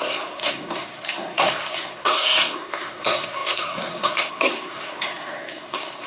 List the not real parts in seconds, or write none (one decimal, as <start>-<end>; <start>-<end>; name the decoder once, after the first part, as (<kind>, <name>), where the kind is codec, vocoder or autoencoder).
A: 0.0-6.1 (codec, SNAC)